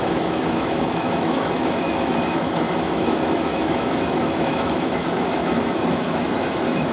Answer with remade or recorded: remade